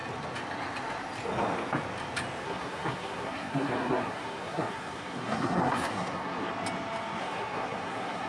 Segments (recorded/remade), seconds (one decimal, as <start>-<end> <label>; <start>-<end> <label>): 0.0-2.4 recorded; 2.4-6.5 remade; 6.5-7.2 recorded; 7.2-8.3 remade